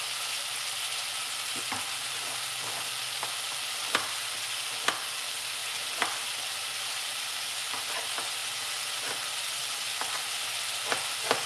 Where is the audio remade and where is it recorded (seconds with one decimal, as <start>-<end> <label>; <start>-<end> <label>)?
0.0-11.5 recorded